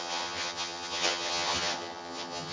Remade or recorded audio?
remade